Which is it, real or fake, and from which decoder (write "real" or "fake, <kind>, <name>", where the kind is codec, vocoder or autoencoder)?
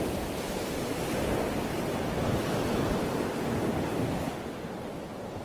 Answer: real